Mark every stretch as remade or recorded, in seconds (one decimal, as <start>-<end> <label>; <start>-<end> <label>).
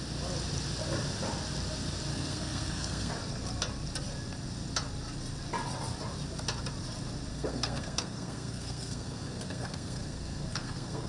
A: 0.0-2.1 recorded; 2.1-3.1 remade; 3.1-7.3 recorded; 7.3-11.1 remade